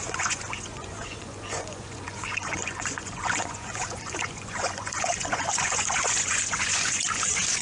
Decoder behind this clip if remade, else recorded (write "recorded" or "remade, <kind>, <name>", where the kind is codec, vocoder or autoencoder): remade, vocoder, Vocos